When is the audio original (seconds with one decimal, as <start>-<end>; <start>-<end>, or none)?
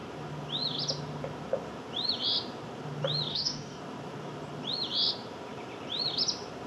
0.0-3.3; 3.8-6.7